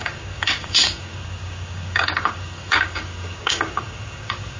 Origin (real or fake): fake